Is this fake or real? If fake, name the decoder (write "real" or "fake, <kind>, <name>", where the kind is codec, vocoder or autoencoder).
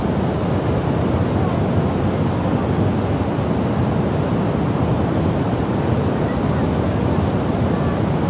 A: real